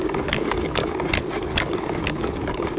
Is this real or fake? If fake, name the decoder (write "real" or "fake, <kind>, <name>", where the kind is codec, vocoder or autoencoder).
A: fake, codec, DAC